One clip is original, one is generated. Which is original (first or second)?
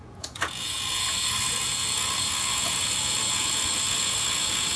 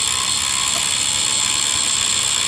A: second